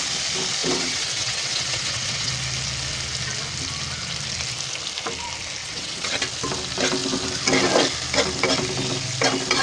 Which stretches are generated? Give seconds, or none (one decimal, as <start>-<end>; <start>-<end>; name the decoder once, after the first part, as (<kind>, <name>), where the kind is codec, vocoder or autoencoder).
0.6-2.3 (vocoder, WaveNeXt); 5.6-6.1